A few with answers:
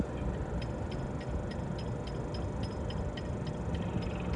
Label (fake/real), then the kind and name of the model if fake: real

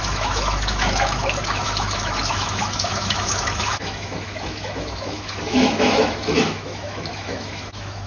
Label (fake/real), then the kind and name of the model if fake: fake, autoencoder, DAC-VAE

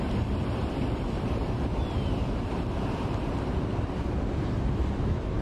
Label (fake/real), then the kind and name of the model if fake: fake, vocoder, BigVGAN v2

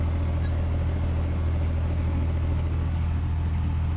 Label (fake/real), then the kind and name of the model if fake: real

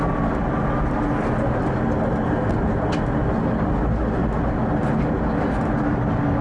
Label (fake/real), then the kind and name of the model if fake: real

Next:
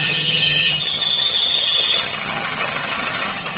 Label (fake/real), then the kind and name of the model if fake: fake, vocoder, HiFi-GAN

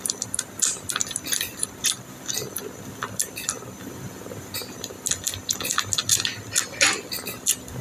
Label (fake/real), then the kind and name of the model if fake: real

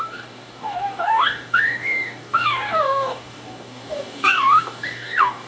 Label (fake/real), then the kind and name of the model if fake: fake, codec, DAC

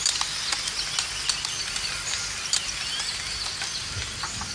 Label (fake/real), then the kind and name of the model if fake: real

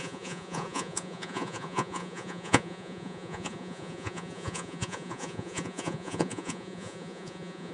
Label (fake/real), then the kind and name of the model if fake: fake, vocoder, Vocos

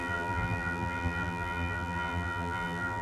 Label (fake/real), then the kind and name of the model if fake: fake, vocoder, BigVGAN v2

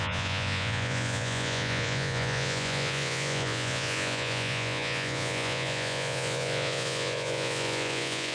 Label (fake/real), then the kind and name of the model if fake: fake, vocoder, Vocos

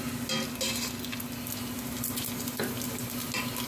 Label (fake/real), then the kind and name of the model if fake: real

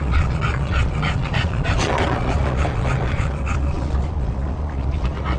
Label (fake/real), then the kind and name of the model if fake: fake, vocoder, Vocos